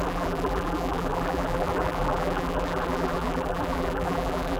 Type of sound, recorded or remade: remade